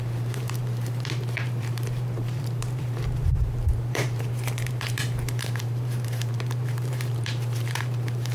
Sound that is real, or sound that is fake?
fake